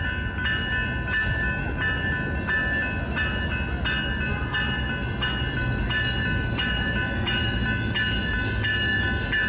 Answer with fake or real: real